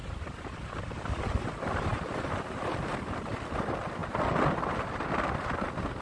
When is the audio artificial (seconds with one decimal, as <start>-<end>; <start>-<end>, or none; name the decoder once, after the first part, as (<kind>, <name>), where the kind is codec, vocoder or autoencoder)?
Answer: 0.0-1.2 (vocoder, BigVGAN v2); 1.9-2.9; 4.0-4.7